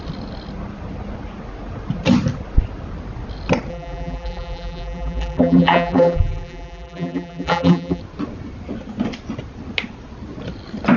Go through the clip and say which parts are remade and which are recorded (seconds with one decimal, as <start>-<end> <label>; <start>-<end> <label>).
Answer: 0.0-3.7 recorded; 3.7-8.0 remade; 8.0-11.0 recorded